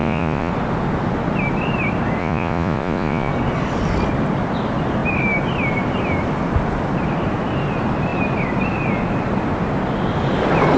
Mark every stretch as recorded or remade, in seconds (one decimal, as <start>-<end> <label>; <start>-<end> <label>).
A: 0.0-0.5 remade; 0.5-2.2 recorded; 2.2-3.3 remade; 3.3-10.8 recorded